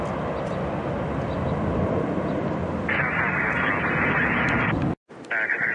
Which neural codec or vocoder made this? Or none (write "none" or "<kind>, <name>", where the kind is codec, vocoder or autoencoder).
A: none